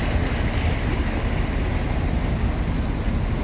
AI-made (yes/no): no